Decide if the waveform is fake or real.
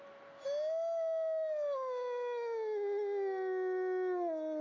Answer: real